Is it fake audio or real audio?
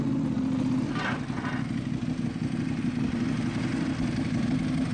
real